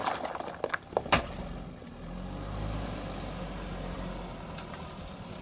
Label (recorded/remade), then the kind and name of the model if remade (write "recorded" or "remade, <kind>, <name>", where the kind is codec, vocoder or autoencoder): recorded